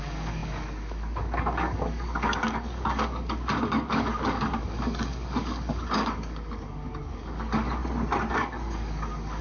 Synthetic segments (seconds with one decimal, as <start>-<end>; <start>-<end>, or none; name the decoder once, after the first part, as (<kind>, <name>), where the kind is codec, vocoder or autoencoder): 0.0-7.8 (codec, DAC); 8.3-9.4